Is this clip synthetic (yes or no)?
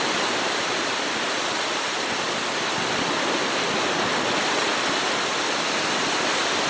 no